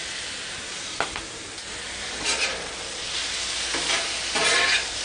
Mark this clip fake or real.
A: real